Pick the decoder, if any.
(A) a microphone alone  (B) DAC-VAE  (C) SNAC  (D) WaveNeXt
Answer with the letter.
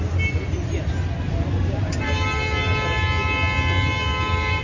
A